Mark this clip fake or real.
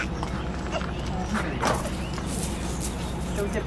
real